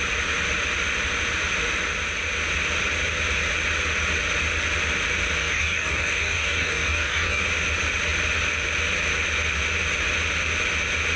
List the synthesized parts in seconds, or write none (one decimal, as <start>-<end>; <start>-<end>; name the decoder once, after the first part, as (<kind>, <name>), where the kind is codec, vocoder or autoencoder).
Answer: 5.4-7.4 (codec, DAC)